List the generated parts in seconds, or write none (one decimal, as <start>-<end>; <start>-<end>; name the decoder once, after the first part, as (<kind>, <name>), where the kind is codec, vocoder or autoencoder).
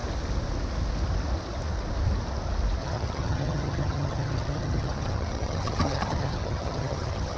2.8-7.4 (vocoder, HiFi-GAN)